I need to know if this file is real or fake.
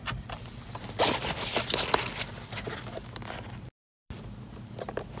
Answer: real